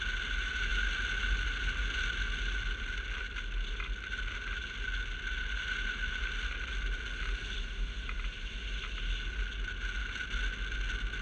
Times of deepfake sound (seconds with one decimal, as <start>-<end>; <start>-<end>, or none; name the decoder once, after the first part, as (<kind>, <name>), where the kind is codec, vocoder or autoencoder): none